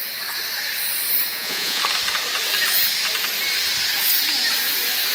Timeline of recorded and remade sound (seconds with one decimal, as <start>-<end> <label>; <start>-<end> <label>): 0.0-1.3 recorded; 1.3-1.8 remade; 1.8-5.1 recorded